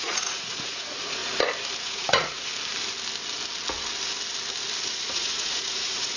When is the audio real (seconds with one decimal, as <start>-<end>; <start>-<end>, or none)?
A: 1.2-1.8; 2.5-4.9